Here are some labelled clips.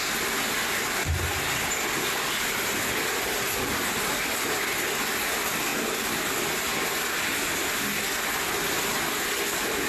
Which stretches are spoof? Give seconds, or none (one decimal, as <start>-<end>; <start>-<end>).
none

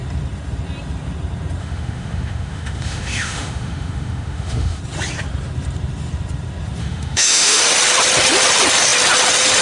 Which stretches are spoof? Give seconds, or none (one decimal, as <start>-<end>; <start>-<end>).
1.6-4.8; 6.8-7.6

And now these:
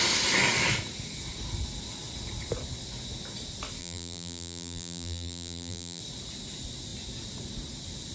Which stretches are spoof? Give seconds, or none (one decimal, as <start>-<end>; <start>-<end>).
3.8-6.0

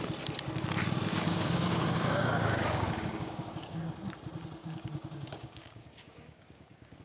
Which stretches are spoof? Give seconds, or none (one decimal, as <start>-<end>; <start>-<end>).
1.1-3.9; 4.6-7.0

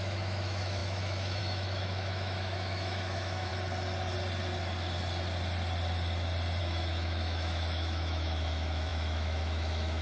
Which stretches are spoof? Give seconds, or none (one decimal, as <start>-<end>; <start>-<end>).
0.0-3.5; 6.6-10.0